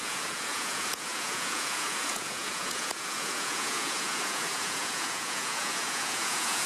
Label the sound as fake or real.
fake